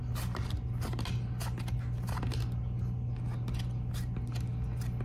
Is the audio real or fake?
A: real